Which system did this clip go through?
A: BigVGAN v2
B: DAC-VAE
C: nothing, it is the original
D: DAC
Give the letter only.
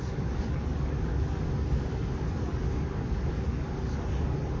D